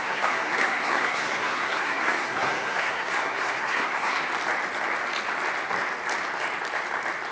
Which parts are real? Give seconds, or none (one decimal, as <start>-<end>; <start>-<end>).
4.2-7.3